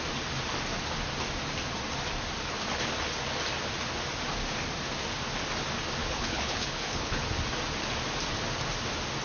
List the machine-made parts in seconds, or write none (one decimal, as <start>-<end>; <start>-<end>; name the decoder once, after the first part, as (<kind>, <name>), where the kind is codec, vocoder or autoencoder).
6.0-7.2 (codec, HILCodec)